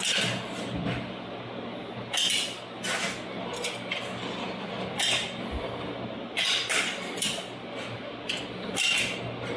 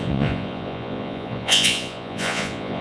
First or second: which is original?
first